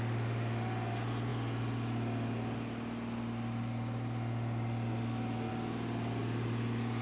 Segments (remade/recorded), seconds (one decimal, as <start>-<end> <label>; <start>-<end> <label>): 0.0-7.0 recorded